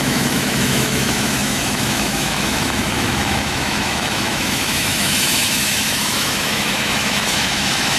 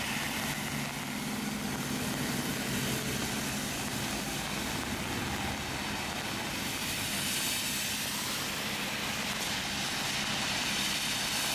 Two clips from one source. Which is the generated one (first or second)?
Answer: first